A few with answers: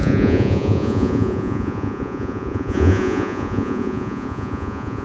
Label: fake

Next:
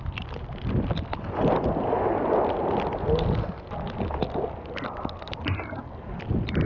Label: real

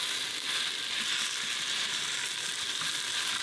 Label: real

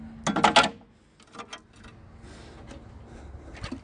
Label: real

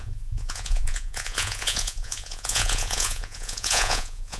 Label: fake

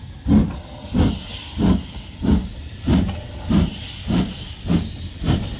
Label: real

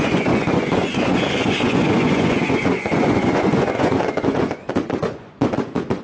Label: fake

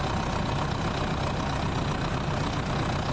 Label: real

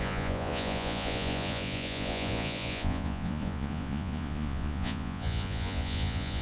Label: fake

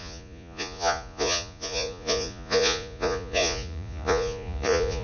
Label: fake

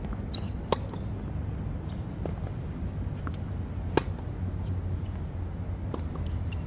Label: real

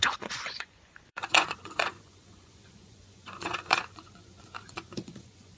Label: fake